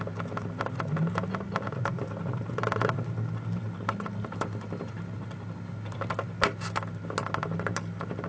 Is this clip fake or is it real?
real